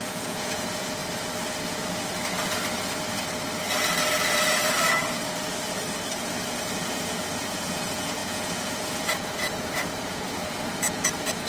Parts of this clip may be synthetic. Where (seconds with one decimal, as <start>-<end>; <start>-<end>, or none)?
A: 0.0-1.0; 6.2-11.5